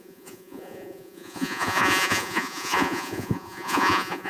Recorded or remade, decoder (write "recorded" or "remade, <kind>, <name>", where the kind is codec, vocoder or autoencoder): remade, vocoder, Vocos